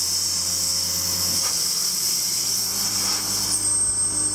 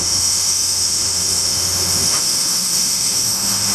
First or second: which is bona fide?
first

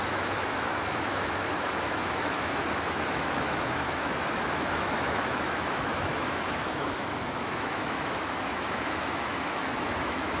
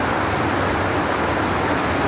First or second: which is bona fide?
second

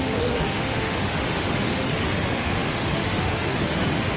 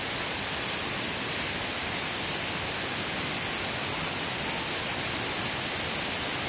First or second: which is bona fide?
second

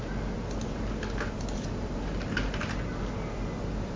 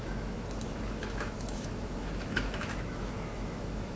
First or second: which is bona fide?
first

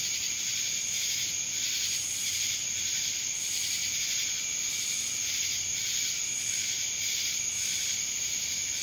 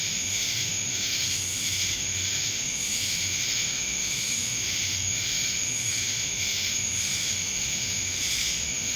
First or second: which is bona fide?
first